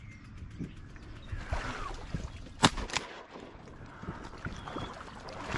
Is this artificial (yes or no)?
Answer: no